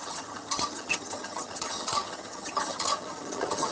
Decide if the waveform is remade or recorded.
remade